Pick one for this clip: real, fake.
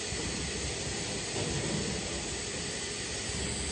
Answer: real